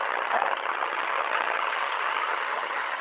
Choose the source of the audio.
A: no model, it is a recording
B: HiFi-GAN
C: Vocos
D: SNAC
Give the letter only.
B